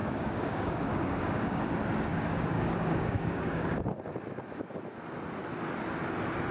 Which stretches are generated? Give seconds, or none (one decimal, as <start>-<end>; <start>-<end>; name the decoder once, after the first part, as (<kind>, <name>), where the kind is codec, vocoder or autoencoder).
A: 0.0-1.6 (codec, DAC); 2.1-3.8